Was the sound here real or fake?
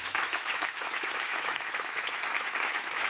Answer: fake